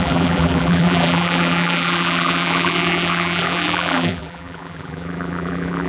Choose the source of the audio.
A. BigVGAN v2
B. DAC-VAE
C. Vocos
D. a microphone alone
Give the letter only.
A